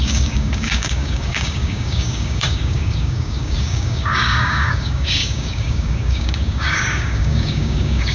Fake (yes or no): yes